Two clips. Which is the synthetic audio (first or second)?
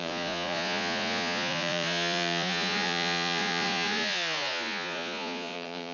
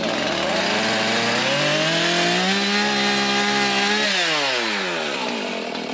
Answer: first